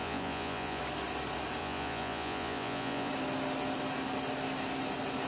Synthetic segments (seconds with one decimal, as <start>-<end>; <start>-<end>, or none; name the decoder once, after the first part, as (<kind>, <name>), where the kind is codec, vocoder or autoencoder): 0.0-0.8 (vocoder, Vocos); 1.6-3.1